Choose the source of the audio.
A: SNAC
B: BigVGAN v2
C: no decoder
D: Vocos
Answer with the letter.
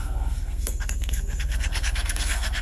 A